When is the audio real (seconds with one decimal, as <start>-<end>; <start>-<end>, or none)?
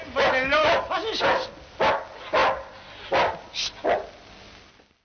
0.0-5.0